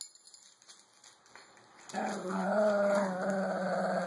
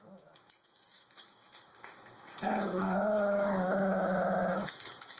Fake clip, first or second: second